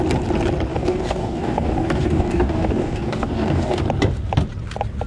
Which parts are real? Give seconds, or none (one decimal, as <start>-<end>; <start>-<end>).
0.0-0.7; 3.8-5.1